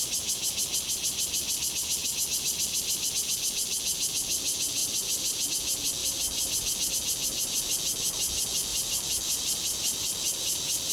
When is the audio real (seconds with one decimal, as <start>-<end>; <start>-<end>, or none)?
0.0-2.0; 3.1-4.8; 5.5-6.0; 6.9-8.7